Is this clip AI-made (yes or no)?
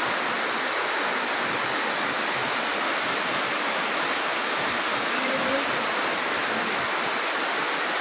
no